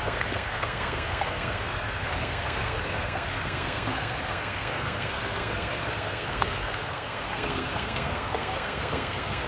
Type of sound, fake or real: fake